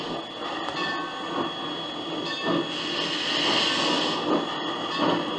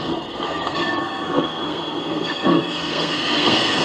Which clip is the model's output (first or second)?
second